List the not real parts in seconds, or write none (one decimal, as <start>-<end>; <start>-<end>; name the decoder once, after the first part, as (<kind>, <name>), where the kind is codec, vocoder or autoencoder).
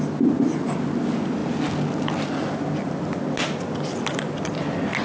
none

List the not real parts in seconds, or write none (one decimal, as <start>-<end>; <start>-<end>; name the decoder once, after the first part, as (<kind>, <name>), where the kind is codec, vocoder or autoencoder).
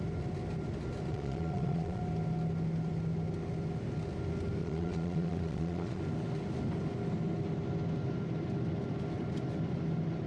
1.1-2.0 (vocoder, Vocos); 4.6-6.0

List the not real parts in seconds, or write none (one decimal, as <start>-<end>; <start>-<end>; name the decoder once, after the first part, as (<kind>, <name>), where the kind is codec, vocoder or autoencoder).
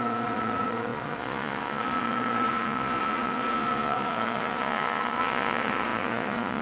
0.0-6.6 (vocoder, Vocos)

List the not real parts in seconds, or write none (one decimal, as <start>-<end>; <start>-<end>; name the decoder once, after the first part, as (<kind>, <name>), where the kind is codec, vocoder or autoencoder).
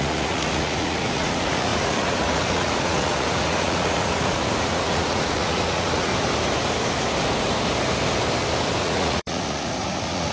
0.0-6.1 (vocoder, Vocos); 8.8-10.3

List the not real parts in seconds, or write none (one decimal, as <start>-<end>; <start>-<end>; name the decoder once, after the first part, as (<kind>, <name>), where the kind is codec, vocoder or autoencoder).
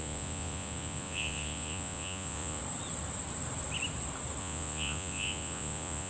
0.0-2.6 (vocoder, Vocos); 4.4-6.1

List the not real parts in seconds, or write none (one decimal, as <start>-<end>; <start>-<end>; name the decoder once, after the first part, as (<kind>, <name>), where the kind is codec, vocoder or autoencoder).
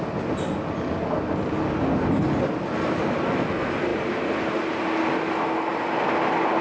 none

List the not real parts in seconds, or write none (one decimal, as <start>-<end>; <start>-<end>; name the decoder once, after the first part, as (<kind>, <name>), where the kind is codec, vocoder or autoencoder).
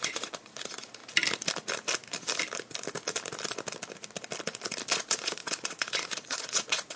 0.0-1.0 (vocoder, Vocos); 4.9-7.0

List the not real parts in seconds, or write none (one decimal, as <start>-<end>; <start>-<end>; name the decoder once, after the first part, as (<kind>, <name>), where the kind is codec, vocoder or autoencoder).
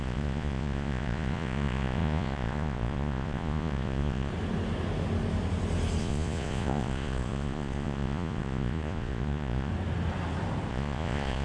0.0-4.3 (vocoder, Vocos); 6.0-9.7; 10.7-11.4